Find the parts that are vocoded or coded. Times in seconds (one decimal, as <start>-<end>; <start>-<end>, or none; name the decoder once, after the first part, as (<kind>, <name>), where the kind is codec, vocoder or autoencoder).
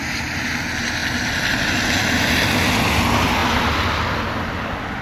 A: 0.0-0.5 (vocoder, BigVGAN v2)